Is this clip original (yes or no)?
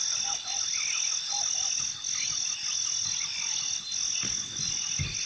yes